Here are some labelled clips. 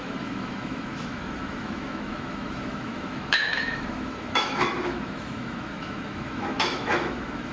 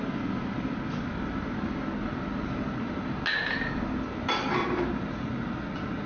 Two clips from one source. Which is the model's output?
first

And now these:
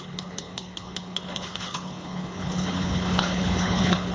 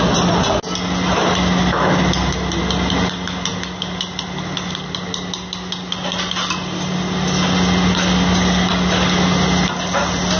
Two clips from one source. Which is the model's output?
first